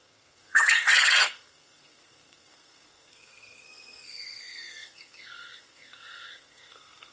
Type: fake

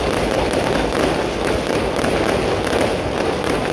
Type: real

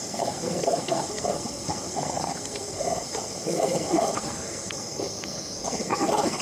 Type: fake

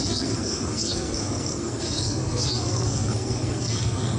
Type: fake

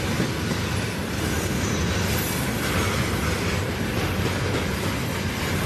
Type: real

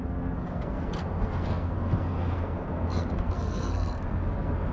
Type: fake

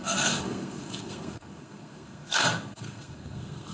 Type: fake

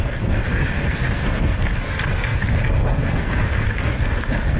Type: fake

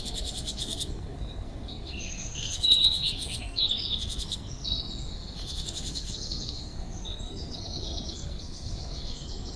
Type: fake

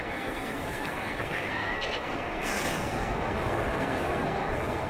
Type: fake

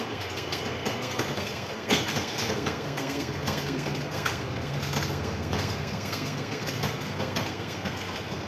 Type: fake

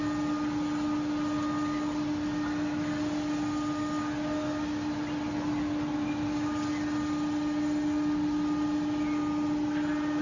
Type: real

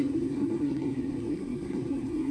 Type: fake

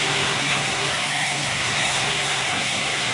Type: fake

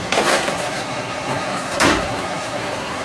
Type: fake